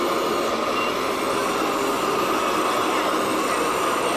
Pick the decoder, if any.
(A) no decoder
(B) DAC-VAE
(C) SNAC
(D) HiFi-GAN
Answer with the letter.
A